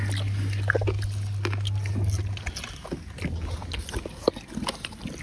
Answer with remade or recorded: recorded